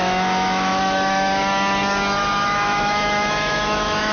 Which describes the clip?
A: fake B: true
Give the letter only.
A